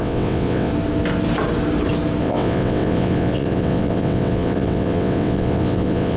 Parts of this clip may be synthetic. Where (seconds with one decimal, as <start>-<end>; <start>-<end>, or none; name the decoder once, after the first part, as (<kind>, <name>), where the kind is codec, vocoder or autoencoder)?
0.0-0.7 (vocoder, WaveNeXt); 2.2-6.2